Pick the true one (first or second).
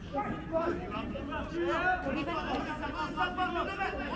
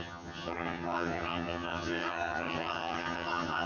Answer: first